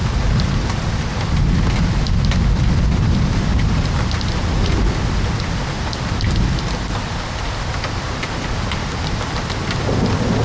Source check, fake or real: real